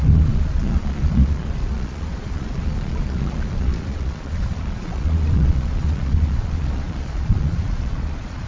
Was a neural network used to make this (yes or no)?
yes